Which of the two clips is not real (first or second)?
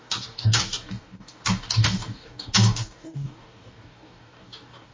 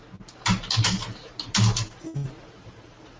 first